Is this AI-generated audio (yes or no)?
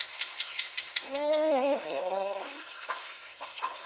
yes